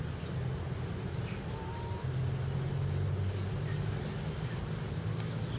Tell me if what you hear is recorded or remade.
recorded